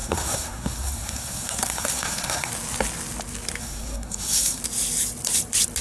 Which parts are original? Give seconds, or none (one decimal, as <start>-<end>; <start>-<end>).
2.5-3.6; 4.6-5.8